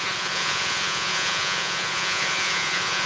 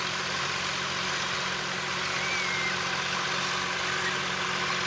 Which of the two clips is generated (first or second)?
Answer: first